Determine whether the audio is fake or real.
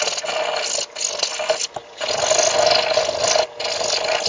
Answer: real